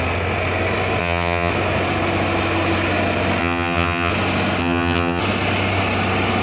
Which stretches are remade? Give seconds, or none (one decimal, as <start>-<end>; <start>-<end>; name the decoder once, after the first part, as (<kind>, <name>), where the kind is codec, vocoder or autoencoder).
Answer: 1.0-1.5 (vocoder, HiFi-GAN); 3.4-4.1; 4.6-5.2